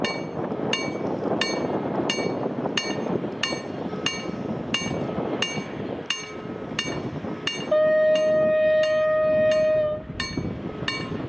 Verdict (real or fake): real